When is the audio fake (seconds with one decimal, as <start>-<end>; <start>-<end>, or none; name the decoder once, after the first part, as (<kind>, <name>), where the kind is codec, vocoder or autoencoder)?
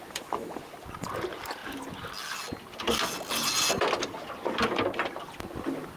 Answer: none